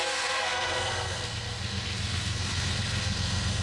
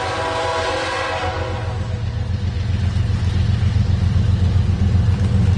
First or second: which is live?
second